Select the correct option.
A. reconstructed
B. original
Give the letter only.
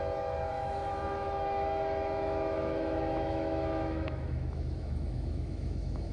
A